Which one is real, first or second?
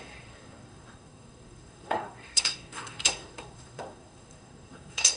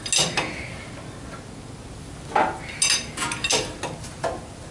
second